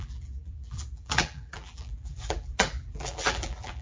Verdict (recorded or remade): remade